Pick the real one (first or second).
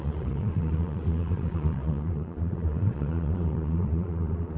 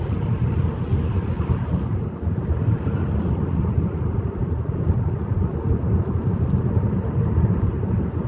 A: second